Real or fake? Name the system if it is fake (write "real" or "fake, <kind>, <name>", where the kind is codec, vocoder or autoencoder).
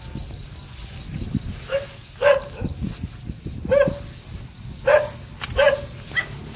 real